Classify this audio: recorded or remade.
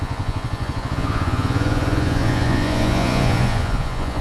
remade